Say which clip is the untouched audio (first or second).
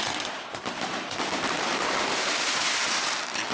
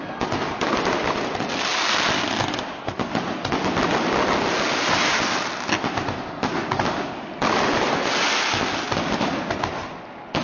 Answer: second